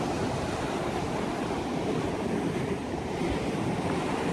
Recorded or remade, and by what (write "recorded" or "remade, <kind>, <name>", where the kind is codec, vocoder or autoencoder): recorded